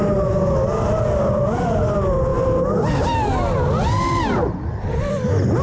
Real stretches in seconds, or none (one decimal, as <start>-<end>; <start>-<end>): 0.0-5.6